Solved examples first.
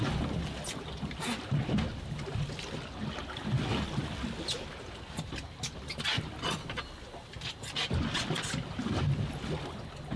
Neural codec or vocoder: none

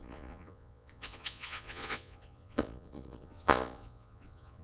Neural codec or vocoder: vocoder, Vocos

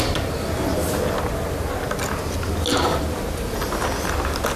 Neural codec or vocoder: none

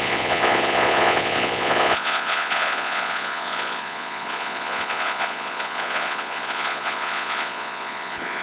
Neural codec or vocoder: vocoder, Vocos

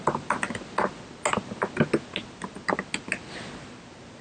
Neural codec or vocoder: none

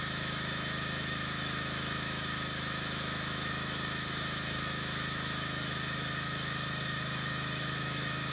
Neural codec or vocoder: autoencoder, DAC-VAE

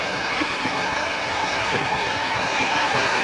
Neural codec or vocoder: codec, SNAC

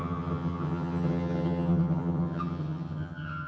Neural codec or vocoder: vocoder, HiFi-GAN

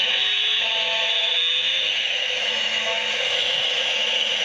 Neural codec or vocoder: autoencoder, DAC-VAE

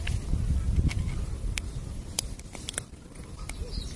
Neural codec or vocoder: none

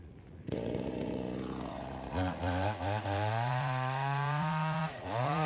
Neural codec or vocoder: vocoder, Vocos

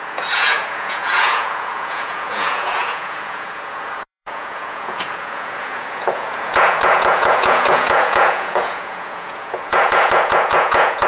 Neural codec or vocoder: vocoder, Vocos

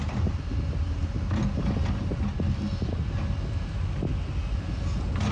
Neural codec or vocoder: none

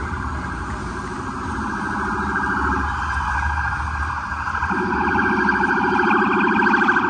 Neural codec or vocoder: none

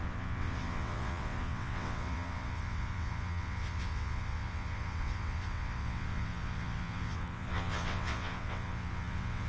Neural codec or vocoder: vocoder, WaveNeXt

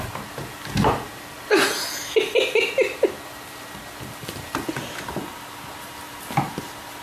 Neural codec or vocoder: none